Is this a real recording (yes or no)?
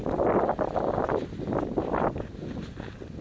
yes